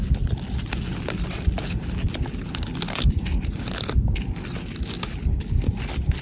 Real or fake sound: real